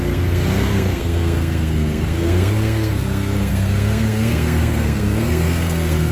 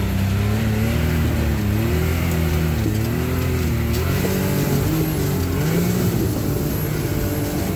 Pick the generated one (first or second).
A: first